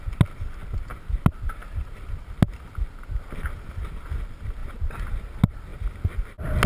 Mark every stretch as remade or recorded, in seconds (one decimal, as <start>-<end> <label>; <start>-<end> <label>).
0.0-6.7 recorded